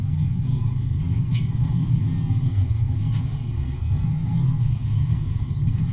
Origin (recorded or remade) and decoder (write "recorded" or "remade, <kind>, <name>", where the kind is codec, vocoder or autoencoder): remade, codec, SNAC